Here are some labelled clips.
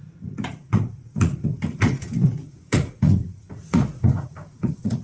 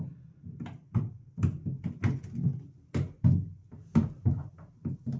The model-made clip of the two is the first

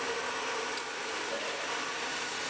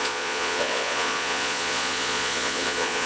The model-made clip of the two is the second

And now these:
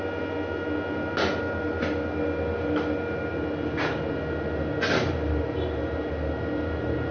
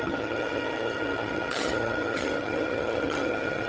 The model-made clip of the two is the second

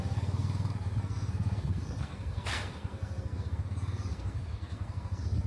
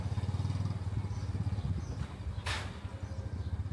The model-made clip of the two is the first